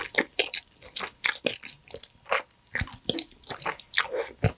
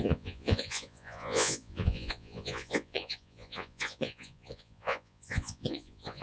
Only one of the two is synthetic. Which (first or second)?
second